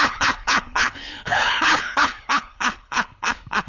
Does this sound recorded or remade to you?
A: remade